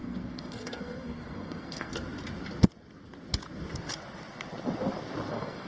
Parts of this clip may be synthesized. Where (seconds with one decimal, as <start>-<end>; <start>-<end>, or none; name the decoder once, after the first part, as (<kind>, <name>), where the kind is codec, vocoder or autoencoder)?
0.0-1.9 (codec, SNAC); 5.3-5.7